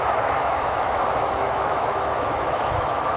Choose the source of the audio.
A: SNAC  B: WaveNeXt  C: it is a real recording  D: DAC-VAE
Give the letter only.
D